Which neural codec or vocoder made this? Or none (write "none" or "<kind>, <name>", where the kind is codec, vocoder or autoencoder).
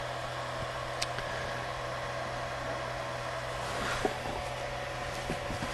none